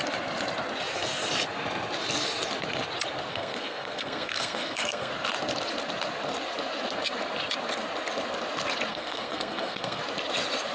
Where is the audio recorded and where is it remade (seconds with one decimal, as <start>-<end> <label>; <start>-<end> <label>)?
0.0-3.3 recorded; 3.3-5.1 remade; 5.1-8.9 recorded; 8.9-10.0 remade; 10.0-10.7 recorded

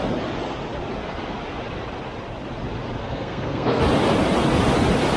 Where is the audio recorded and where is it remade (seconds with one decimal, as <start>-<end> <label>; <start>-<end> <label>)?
0.0-3.0 recorded; 3.0-3.8 remade; 3.8-5.2 recorded

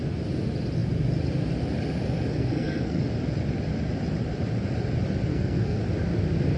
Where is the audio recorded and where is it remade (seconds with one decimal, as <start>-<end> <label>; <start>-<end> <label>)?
0.0-2.3 recorded; 2.3-3.0 remade; 3.0-5.3 recorded; 5.3-5.8 remade; 5.8-6.6 recorded

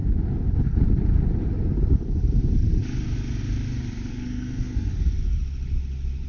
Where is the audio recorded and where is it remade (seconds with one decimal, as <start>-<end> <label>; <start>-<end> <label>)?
0.0-4.1 recorded; 4.1-4.9 remade; 4.9-6.3 recorded

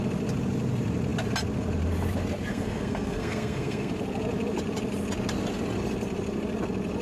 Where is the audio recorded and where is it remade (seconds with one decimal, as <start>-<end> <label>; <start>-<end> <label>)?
0.0-2.5 recorded; 2.5-3.9 remade; 3.9-7.0 recorded